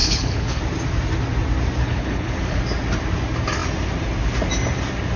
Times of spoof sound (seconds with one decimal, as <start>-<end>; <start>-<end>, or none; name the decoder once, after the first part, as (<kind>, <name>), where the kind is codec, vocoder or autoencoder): 0.0-0.6 (codec, HILCodec); 1.8-2.6